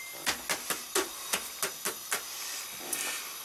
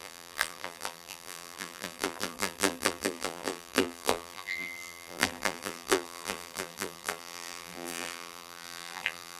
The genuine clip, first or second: first